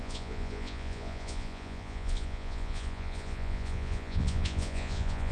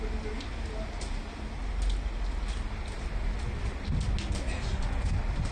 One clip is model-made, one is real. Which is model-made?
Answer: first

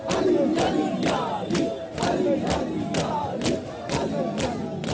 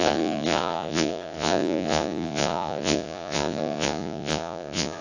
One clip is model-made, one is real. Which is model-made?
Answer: second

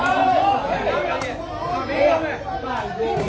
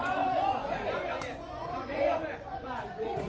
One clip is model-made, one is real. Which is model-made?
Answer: second